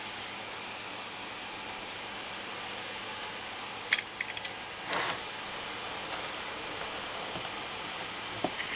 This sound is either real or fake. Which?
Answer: real